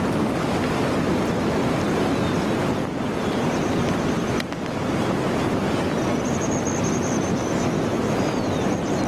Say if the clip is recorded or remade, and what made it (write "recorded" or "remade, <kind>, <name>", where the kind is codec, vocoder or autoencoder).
recorded